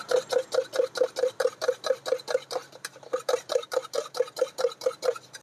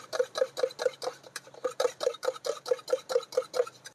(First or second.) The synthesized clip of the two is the second